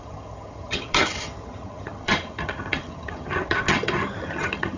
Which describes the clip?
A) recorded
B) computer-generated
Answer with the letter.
B